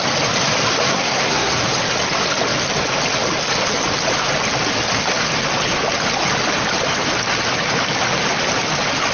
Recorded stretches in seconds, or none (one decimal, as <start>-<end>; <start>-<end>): 0.0-0.9; 1.6-9.1